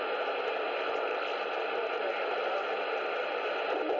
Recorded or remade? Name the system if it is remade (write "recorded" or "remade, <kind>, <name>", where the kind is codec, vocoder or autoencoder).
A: recorded